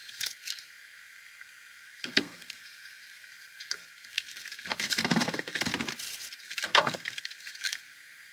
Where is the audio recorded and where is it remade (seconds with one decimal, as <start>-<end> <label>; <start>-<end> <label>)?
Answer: 0.0-5.7 remade; 5.7-6.4 recorded; 6.4-8.3 remade